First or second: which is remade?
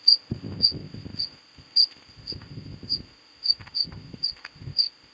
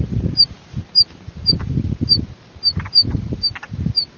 first